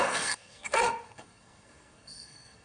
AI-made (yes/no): yes